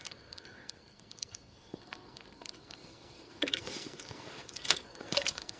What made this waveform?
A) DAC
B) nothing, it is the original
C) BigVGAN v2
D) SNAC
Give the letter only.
D